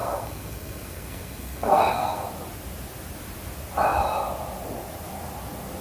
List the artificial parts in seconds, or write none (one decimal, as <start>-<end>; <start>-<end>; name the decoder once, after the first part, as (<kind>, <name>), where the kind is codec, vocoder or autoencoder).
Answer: 0.0-2.3 (codec, SNAC)